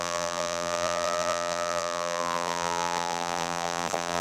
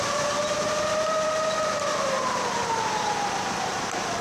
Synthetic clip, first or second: first